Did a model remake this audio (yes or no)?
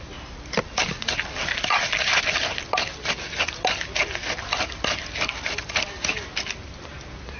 no